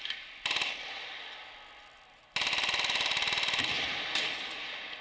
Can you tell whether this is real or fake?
real